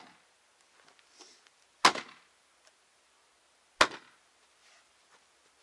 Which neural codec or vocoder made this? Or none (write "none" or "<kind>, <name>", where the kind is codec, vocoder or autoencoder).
none